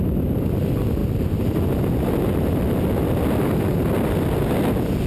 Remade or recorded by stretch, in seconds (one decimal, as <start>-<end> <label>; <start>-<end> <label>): 0.0-5.1 recorded